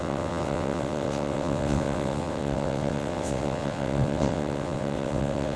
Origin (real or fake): fake